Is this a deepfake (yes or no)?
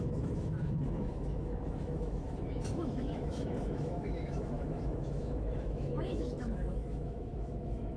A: yes